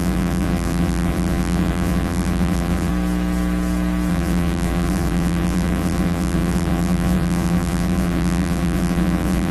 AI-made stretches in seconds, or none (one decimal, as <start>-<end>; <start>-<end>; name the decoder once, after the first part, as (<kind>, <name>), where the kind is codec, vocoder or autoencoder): 0.0-2.9 (vocoder, BigVGAN v2); 4.1-9.5

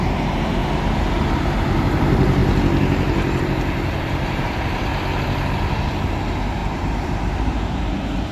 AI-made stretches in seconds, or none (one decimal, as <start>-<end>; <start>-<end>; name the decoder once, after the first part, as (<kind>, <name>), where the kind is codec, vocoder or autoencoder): 0.0-2.4 (vocoder, BigVGAN v2); 3.4-4.9; 5.7-8.3

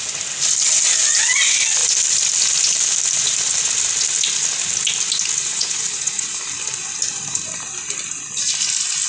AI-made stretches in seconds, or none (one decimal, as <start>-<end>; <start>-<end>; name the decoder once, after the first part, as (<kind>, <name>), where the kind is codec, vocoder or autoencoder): 5.4-6.4 (vocoder, Vocos)

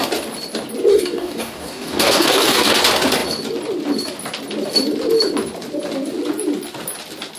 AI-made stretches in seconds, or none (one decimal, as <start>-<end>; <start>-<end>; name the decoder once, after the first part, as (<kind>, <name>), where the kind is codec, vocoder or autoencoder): 0.9-2.8 (codec, DAC)

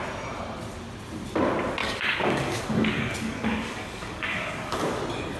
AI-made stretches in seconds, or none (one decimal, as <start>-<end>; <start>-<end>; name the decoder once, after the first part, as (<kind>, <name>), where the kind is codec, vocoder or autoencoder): 1.8-5.0 (codec, DAC)

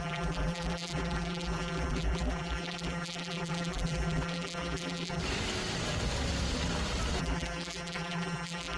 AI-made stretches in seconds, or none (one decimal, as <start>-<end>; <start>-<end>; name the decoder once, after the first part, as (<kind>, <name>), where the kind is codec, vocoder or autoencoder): 0.0-5.2 (vocoder, BigVGAN v2); 7.2-8.8